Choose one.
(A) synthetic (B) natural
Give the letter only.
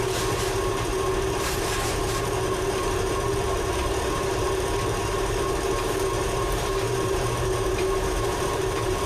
A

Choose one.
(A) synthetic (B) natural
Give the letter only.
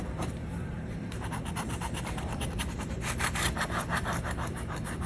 A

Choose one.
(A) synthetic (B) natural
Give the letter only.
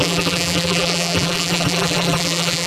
A